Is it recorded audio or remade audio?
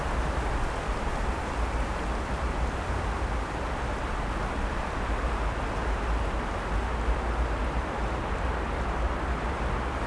recorded